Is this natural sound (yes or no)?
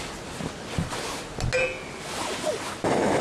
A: yes